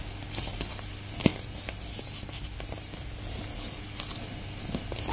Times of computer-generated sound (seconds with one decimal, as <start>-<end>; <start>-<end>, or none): none